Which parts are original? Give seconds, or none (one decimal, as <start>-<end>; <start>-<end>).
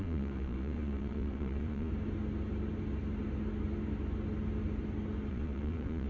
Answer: 1.9-5.3